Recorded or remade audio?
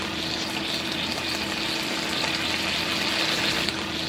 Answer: recorded